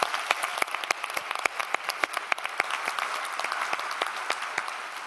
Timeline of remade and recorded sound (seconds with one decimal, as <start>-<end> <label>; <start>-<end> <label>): 0.0-5.1 recorded